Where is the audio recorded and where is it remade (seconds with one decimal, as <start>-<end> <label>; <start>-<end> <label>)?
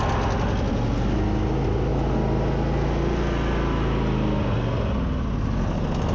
0.0-6.1 recorded